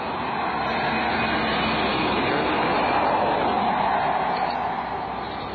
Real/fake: real